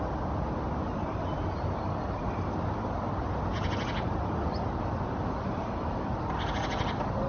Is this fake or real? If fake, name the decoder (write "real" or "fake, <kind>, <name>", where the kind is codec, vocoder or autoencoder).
real